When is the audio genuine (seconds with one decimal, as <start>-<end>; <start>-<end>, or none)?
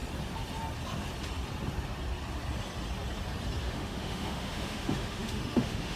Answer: 0.0-3.6